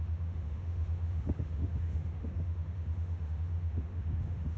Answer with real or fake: fake